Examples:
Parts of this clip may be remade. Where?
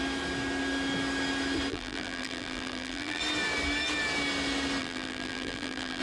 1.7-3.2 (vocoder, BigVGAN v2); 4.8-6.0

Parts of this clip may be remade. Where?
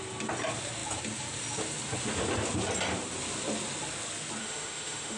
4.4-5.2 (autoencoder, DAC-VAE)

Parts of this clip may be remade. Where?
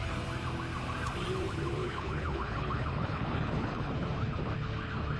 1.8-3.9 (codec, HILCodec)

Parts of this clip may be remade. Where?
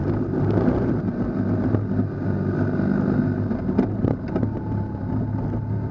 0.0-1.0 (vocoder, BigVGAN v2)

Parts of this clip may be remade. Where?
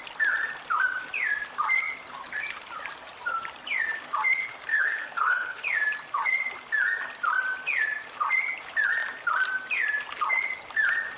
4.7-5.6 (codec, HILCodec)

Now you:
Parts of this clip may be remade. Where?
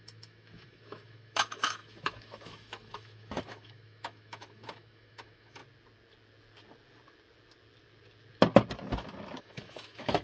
0.0-5.6 (autoencoder, DAC-VAE); 9.4-10.2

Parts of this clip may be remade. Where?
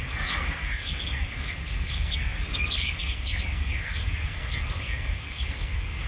0.0-6.1 (codec, SNAC)